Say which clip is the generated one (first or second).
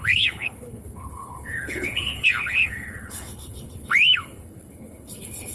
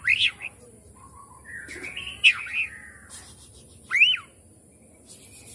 first